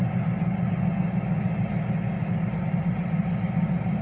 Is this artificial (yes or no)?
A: no